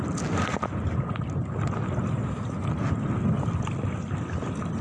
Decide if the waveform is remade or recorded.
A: recorded